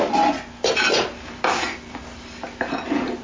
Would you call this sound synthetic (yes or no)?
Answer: no